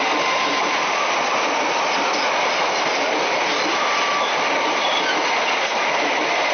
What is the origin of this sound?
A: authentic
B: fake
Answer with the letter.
A